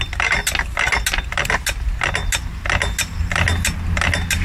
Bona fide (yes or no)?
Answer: yes